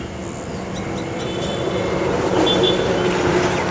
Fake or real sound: real